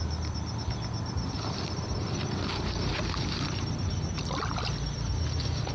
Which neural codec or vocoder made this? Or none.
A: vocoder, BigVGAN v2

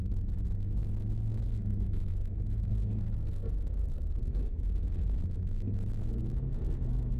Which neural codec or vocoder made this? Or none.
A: codec, SNAC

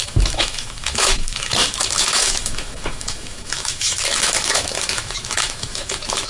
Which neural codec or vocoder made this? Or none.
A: autoencoder, DAC-VAE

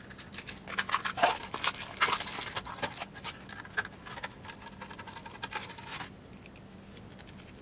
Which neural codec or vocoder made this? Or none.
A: none